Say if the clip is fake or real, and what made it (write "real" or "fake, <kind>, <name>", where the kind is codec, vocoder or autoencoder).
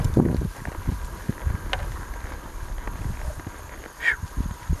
real